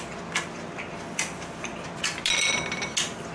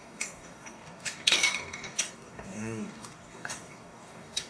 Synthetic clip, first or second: second